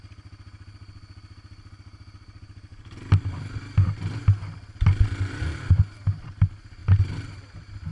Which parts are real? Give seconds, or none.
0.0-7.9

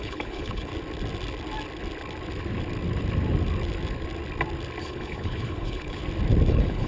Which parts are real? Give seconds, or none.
0.7-4.8; 6.0-6.5

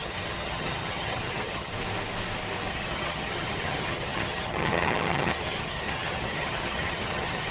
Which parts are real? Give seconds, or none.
1.7-2.7

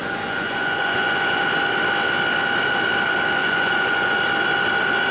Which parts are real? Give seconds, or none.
1.4-3.4; 4.2-5.1

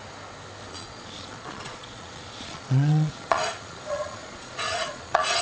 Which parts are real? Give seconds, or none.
0.0-0.7

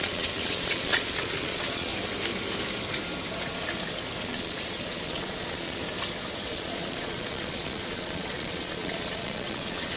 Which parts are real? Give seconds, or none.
1.9-4.2; 5.8-6.3